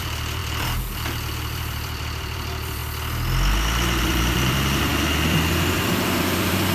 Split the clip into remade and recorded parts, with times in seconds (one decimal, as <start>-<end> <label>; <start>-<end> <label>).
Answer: 0.0-2.8 remade; 2.8-4.0 recorded; 4.0-4.9 remade; 4.9-5.5 recorded; 5.5-6.7 remade